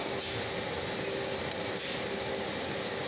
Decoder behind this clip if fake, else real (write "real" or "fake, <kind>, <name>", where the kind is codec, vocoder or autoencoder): real